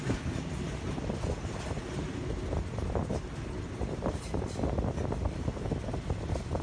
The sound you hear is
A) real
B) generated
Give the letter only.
A